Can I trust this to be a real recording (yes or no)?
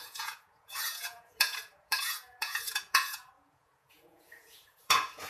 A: no